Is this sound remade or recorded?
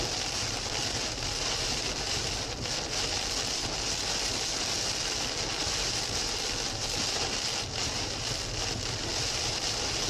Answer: recorded